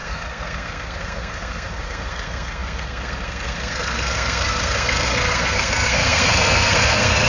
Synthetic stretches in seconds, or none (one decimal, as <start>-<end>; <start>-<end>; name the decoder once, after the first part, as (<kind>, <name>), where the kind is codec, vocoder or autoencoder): 0.0-7.3 (codec, SNAC)

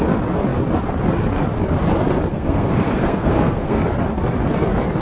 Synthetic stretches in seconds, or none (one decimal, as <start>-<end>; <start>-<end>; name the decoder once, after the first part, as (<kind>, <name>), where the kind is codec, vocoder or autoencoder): 2.3-3.8 (codec, SNAC)

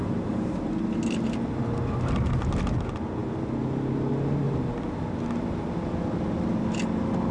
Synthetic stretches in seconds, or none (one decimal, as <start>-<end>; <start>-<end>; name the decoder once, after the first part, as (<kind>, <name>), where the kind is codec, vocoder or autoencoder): none

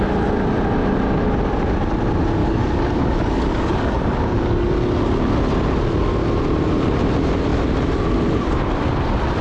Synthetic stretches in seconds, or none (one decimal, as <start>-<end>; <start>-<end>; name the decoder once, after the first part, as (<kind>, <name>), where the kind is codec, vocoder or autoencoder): 2.4-4.7 (codec, DAC)

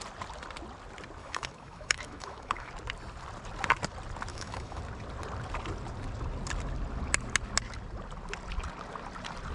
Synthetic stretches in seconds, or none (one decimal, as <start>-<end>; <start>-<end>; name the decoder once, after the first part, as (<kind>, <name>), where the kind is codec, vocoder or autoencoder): 1.2-2.7 (autoencoder, DAC-VAE); 4.3-4.8